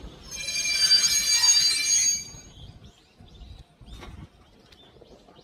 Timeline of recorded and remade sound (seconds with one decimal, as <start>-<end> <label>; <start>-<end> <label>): 0.0-5.4 recorded